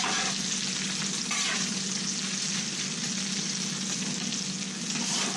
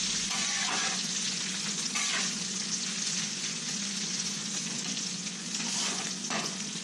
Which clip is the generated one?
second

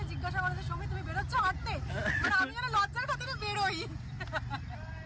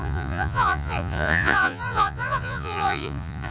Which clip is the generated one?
second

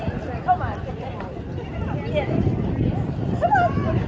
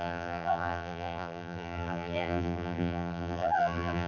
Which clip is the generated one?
second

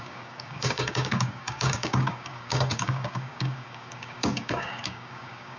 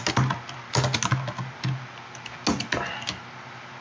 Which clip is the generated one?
first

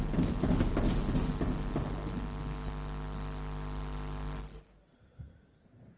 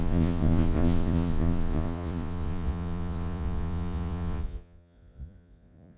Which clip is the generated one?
second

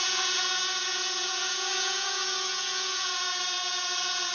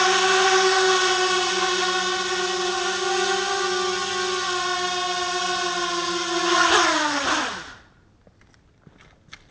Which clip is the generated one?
first